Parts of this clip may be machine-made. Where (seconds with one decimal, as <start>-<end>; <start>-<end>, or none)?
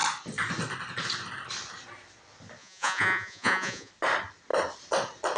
2.6-3.9